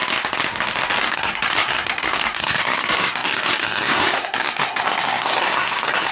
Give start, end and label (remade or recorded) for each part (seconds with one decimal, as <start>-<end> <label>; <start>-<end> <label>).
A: 0.0-1.0 recorded; 1.0-6.1 remade

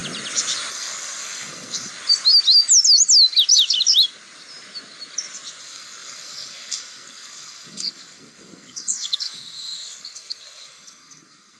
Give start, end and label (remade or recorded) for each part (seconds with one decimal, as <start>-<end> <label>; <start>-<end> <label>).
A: 0.0-0.7 recorded; 0.7-1.9 remade; 1.9-5.6 recorded; 5.6-11.6 remade

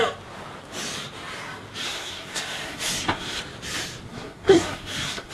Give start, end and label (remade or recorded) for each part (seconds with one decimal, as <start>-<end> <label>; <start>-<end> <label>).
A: 0.0-1.8 recorded; 1.8-3.4 remade; 3.4-4.1 recorded; 4.1-5.3 remade

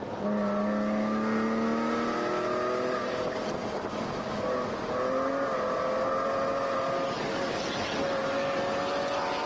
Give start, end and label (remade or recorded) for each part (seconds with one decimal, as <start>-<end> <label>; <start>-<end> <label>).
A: 0.0-9.5 recorded